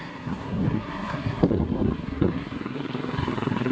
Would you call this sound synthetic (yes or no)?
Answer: yes